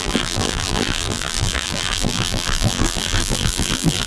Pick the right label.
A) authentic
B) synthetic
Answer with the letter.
B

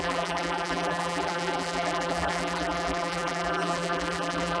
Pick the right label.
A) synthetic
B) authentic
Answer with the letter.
A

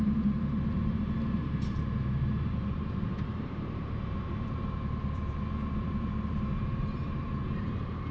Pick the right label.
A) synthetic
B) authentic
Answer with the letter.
A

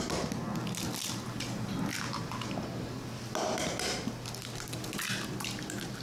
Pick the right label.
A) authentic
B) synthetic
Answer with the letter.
A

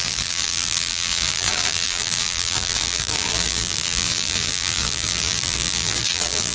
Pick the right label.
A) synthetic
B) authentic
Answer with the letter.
A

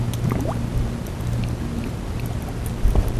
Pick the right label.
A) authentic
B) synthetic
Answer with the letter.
B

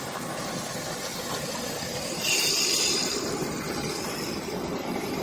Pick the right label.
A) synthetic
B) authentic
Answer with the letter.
B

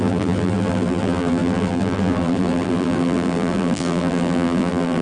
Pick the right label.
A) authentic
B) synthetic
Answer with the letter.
B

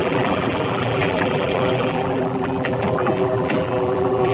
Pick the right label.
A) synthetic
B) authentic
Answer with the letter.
A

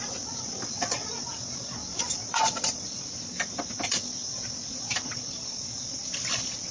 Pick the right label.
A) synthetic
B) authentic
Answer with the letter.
A